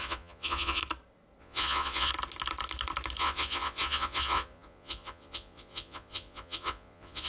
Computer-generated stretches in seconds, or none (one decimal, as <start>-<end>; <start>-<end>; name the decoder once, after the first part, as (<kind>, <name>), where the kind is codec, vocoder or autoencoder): 0.0-0.8 (vocoder, Vocos); 1.4-2.1; 3.2-7.3